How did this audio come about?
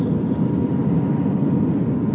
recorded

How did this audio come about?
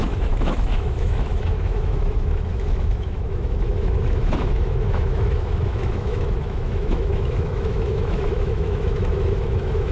remade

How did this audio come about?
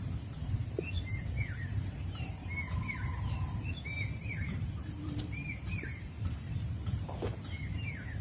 remade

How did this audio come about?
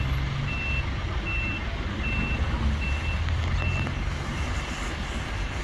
recorded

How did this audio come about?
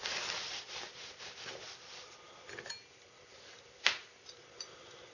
recorded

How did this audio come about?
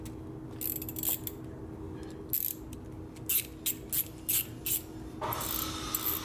recorded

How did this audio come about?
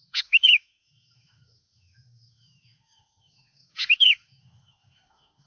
remade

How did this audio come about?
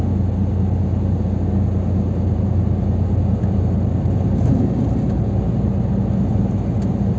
recorded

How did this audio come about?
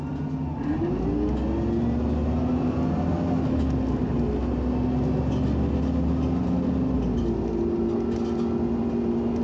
recorded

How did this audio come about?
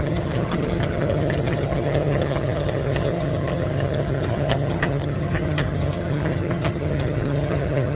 remade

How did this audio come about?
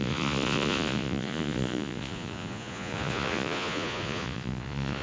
remade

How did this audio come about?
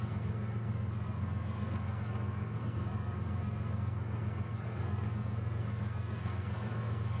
remade